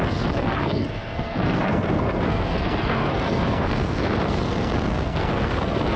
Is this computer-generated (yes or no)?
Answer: yes